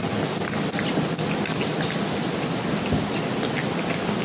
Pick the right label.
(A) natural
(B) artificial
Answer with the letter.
A